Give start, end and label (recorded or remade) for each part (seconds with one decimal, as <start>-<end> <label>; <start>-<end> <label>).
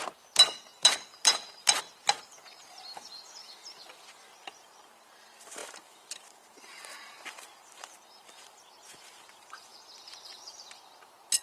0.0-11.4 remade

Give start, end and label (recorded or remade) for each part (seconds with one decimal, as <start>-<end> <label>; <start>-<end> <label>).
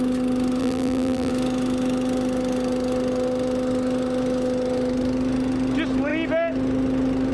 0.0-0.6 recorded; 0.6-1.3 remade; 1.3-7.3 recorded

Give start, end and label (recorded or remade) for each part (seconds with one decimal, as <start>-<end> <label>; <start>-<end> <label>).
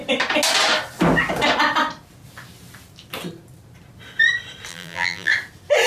0.0-4.7 recorded; 4.7-5.3 remade; 5.3-5.9 recorded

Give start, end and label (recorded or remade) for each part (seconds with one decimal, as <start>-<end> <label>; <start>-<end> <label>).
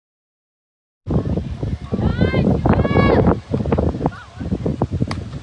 0.0-2.1 recorded; 2.1-3.3 remade; 3.3-4.7 recorded; 4.7-5.4 remade